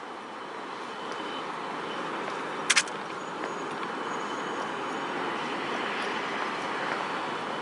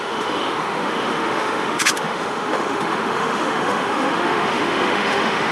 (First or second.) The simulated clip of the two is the second